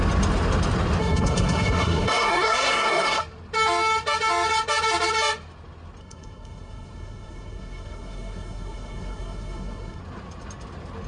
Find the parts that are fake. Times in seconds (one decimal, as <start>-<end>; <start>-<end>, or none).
1.0-3.2; 6.0-10.0

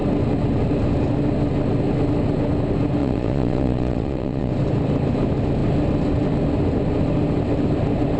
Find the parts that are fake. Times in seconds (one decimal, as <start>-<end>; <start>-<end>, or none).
3.0-4.5

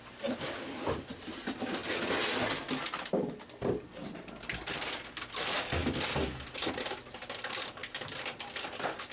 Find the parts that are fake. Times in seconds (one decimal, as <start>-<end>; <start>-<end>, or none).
0.0-1.8; 5.3-5.8; 6.7-9.1

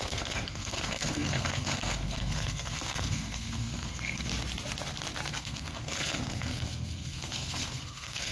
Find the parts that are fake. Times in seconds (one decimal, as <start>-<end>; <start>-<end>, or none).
0.0-4.3; 5.3-8.3